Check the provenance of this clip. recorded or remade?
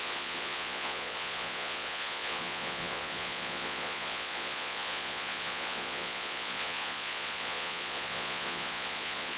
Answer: remade